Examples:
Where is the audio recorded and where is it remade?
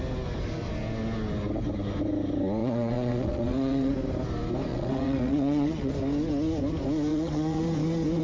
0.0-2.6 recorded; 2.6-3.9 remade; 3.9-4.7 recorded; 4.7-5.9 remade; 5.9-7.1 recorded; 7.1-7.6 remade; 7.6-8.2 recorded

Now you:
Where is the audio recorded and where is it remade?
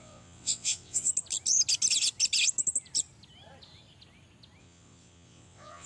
0.0-1.1 remade; 1.1-4.6 recorded; 4.6-5.9 remade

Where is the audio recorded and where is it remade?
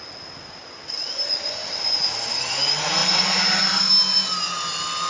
0.0-5.1 recorded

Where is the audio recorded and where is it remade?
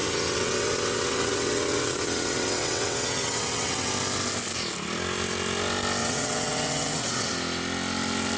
0.0-3.9 remade; 3.9-6.0 recorded; 6.0-7.3 remade; 7.3-8.4 recorded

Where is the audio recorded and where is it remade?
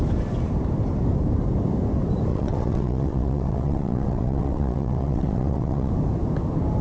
0.0-2.3 recorded; 2.3-5.9 remade; 5.9-6.8 recorded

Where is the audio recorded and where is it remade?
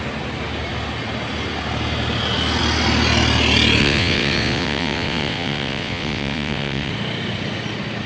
0.0-3.8 recorded; 3.8-6.9 remade; 6.9-8.1 recorded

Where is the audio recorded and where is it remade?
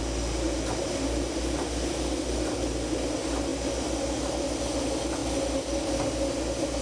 0.0-6.8 recorded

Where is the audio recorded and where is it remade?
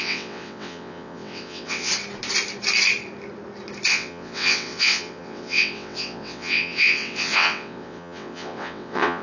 0.0-1.9 remade; 1.9-3.9 recorded; 3.9-9.2 remade